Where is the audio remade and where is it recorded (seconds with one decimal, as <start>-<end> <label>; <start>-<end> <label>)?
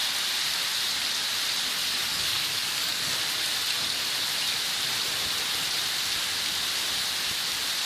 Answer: 0.0-1.9 recorded; 1.9-3.1 remade; 3.1-7.9 recorded